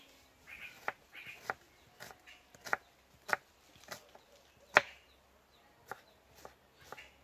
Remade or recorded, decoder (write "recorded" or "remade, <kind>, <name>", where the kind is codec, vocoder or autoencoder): recorded